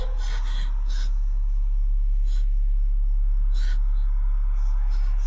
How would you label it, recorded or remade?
recorded